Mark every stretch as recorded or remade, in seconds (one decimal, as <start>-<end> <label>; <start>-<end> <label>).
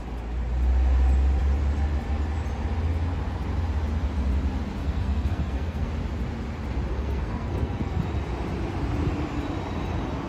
0.0-4.8 recorded; 4.8-5.9 remade; 5.9-6.9 recorded; 6.9-8.0 remade; 8.0-10.3 recorded